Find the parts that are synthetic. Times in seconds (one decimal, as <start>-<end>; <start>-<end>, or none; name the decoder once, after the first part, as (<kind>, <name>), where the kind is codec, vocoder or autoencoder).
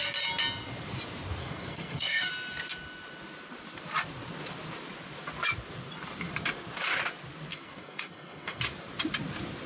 1.4-2.3 (codec, SNAC); 7.5-8.6